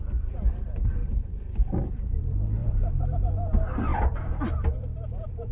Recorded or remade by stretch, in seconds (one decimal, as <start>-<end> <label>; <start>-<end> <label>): 0.0-1.0 recorded; 1.0-1.5 remade; 1.5-2.6 recorded; 2.6-3.3 remade; 3.3-3.9 recorded; 3.9-5.5 remade